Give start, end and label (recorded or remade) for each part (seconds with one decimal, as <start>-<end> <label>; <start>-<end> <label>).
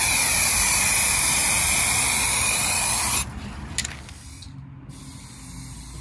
0.0-6.0 recorded